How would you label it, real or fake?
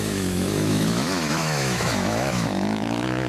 fake